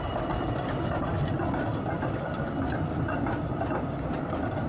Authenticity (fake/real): fake